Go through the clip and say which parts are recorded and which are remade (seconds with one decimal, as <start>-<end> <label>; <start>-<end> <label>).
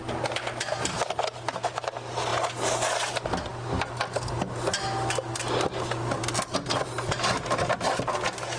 0.0-8.6 recorded